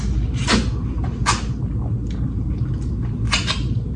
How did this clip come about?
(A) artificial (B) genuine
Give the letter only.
B